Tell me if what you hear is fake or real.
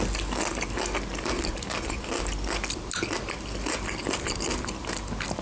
real